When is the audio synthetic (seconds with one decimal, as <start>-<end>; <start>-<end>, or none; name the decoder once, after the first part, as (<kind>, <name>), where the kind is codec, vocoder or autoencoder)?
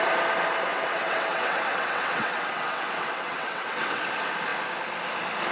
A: 0.7-4.0 (vocoder, WaveNeXt)